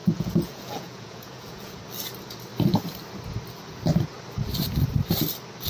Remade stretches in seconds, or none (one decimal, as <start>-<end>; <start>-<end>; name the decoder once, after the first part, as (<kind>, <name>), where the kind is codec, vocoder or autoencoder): 0.0-1.8 (vocoder, Vocos)